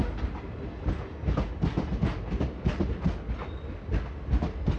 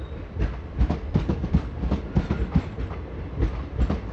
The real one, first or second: first